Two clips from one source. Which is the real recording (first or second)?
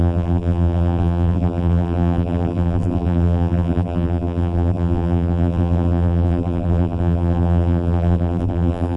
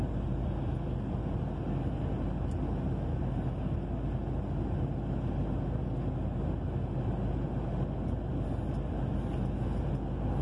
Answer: second